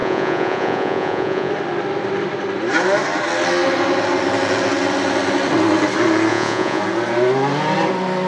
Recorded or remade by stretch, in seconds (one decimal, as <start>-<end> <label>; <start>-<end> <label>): 0.0-1.5 remade; 1.5-6.3 recorded; 6.3-6.8 remade; 6.8-8.3 recorded